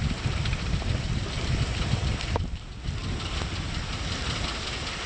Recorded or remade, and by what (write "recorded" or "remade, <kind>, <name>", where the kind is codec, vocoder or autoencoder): recorded